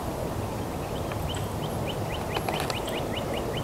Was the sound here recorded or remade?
recorded